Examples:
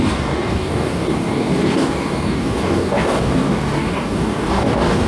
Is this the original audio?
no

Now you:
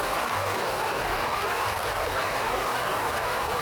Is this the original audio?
no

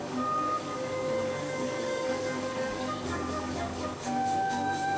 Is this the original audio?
no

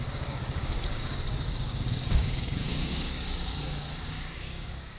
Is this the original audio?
no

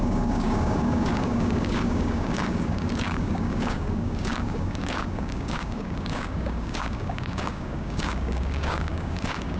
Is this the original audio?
no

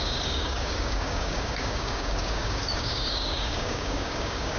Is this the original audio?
no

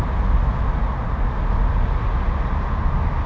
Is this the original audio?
yes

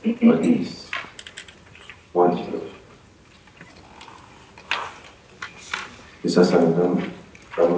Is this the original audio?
yes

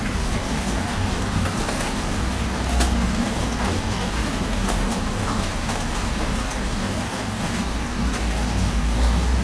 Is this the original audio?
no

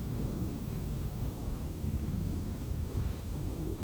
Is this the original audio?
no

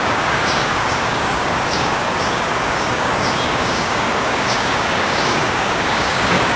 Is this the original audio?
no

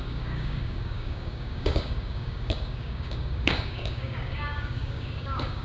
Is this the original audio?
no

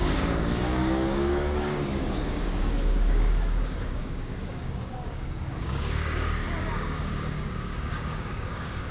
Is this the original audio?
no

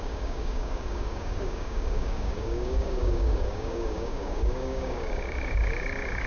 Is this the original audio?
no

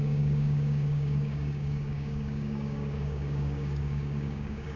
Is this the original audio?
no